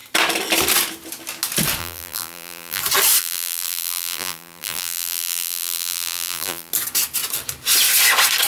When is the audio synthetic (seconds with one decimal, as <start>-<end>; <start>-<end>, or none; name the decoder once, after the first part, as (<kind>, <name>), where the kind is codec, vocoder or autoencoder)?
1.8-2.8 (vocoder, BigVGAN v2); 3.2-6.7

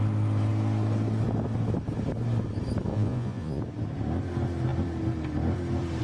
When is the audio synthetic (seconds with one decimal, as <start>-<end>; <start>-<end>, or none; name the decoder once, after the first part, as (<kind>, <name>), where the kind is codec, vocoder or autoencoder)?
2.9-3.6 (vocoder, Vocos)

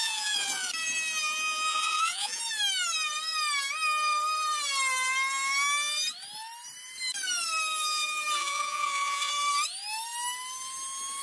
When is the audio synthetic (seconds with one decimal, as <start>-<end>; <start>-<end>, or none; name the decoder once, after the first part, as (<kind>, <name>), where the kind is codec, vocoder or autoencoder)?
0.0-0.7 (vocoder, Vocos); 1.7-2.4; 8.4-9.3